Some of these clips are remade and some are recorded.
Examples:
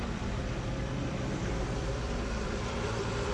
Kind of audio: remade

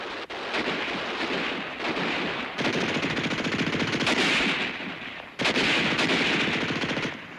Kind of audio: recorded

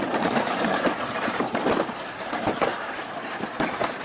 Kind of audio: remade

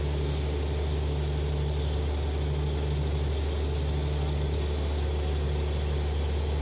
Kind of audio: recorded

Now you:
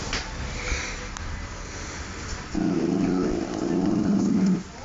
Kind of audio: remade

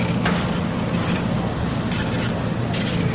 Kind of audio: recorded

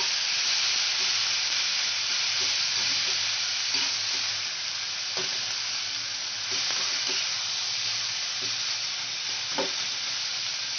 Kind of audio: remade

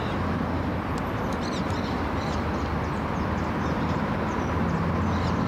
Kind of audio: recorded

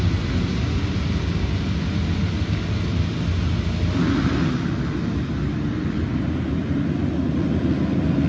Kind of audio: recorded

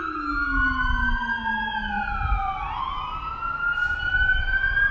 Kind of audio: recorded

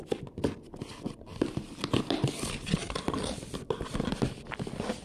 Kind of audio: recorded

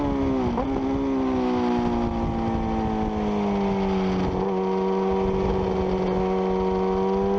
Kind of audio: recorded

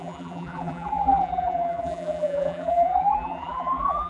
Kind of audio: remade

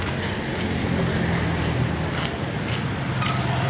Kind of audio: recorded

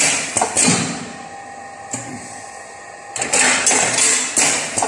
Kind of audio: recorded